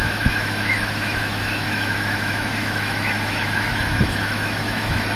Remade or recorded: remade